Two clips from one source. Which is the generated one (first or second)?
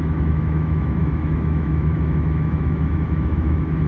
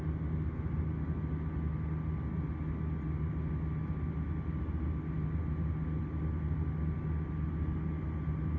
first